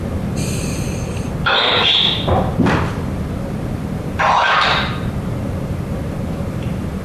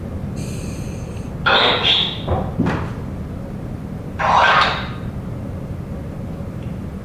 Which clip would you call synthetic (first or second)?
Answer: first